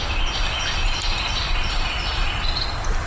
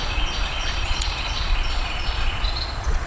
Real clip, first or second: first